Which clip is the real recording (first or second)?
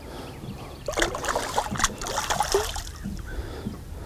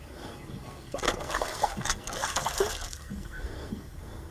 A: first